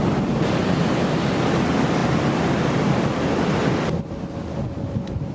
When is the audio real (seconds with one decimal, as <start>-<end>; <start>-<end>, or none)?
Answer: 0.0-5.3